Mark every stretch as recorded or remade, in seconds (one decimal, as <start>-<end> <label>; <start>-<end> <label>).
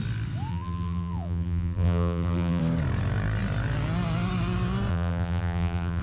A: 0.0-0.5 recorded; 0.5-2.6 remade; 2.6-4.9 recorded; 4.9-6.0 remade